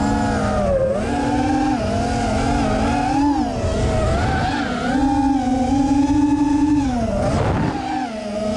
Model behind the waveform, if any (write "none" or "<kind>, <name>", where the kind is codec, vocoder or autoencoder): none